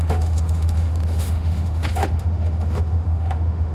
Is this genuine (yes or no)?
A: no